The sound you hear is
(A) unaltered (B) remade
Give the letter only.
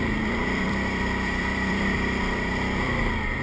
B